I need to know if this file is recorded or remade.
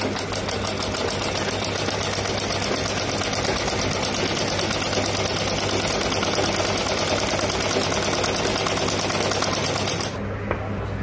recorded